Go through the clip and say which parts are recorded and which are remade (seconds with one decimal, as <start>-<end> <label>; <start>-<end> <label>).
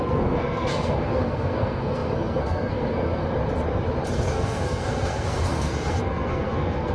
0.0-3.2 remade; 3.2-4.1 recorded; 4.1-6.9 remade